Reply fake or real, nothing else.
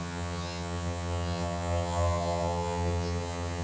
fake